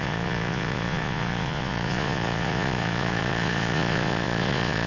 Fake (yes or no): yes